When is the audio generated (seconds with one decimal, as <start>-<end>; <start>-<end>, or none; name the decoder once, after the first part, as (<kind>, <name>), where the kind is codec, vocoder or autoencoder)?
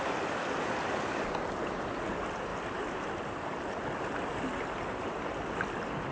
none